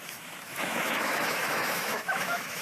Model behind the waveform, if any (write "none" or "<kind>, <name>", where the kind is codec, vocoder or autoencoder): autoencoder, DAC-VAE